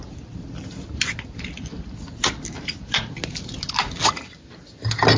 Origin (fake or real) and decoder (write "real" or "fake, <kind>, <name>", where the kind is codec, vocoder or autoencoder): real